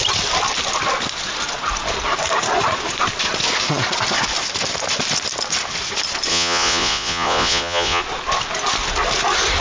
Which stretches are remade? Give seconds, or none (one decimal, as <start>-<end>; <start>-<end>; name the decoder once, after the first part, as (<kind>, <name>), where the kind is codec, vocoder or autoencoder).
6.3-8.0 (vocoder, Vocos)